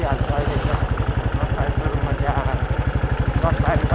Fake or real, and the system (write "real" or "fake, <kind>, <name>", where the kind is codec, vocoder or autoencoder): real